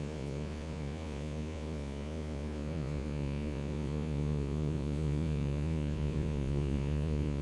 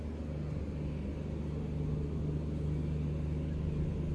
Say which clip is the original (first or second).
second